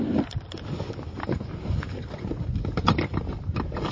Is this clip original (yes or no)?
yes